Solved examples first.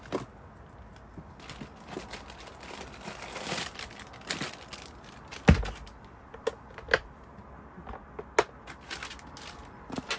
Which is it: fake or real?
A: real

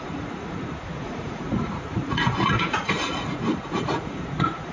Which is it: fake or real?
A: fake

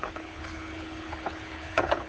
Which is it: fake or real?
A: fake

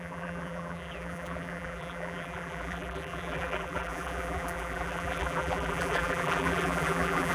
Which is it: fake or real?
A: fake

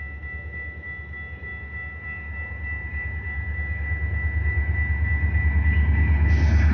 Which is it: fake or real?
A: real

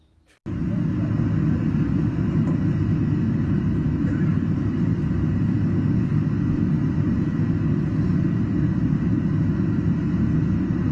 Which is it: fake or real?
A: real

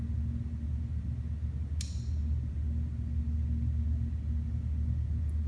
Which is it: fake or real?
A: real